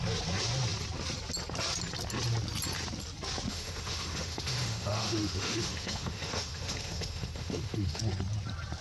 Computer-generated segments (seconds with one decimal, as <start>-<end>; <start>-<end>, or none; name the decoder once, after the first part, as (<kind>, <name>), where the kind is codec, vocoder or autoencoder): 3.5-8.0 (autoencoder, DAC-VAE)

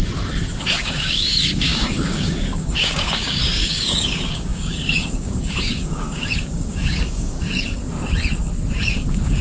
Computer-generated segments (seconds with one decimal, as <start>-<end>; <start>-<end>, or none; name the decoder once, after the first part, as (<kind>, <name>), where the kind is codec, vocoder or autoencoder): 0.8-7.8 (codec, DAC); 8.8-9.4

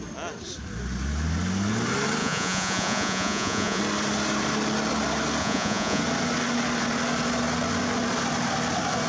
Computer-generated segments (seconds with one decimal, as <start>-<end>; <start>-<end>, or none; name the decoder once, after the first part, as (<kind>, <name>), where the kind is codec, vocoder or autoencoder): 2.2-3.8 (vocoder, Vocos); 5.4-6.0

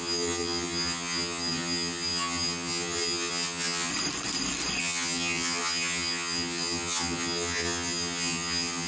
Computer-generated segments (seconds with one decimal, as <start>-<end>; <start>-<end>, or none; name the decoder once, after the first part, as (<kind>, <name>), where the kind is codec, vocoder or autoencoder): 0.0-3.9 (vocoder, HiFi-GAN); 4.8-8.9

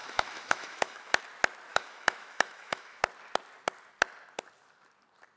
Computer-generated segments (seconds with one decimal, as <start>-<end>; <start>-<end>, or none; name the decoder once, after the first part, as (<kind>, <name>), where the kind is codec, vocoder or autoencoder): 0.0-1.2 (autoencoder, DAC-VAE); 1.7-3.0

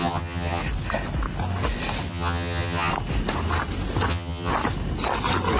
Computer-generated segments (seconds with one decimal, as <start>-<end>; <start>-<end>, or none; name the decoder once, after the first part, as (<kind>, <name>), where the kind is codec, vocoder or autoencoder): 0.0-0.6 (vocoder, HiFi-GAN); 2.1-2.9; 4.1-4.5

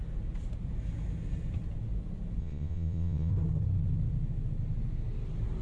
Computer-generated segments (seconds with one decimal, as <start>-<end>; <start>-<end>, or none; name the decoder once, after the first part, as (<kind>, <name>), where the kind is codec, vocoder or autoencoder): 2.4-3.3 (vocoder, Vocos)